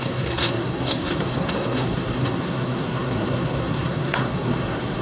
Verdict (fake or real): fake